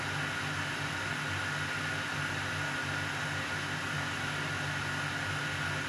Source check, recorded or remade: recorded